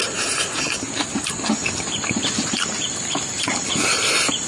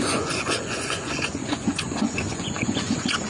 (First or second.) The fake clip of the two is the second